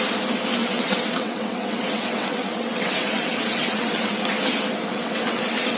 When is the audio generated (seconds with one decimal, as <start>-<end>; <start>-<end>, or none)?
0.6-4.1; 4.9-5.8